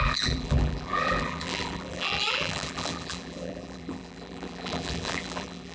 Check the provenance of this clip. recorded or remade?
remade